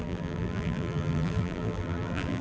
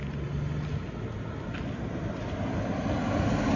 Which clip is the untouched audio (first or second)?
second